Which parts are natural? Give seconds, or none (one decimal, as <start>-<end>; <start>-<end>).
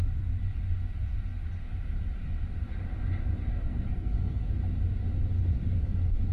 0.0-3.5; 4.5-5.6